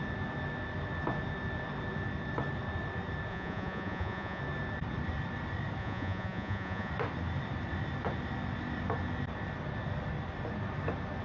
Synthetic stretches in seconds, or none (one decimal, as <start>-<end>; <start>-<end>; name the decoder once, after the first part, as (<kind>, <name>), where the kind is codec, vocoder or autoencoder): 3.3-4.4 (vocoder, Vocos); 5.8-6.9